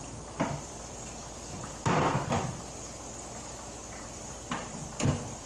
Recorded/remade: remade